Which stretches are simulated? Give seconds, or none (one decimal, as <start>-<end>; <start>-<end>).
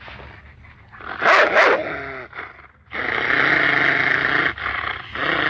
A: none